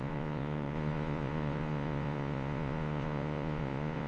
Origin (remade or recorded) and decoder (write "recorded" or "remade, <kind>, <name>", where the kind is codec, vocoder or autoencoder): remade, vocoder, Vocos